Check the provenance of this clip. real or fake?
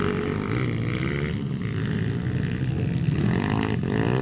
real